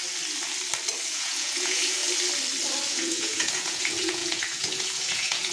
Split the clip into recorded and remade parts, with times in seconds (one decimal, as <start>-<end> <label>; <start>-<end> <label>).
0.0-1.1 recorded; 1.1-2.0 remade; 2.0-2.9 recorded; 2.9-5.5 remade